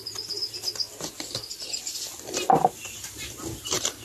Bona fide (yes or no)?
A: yes